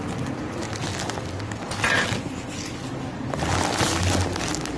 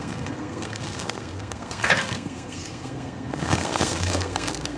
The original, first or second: first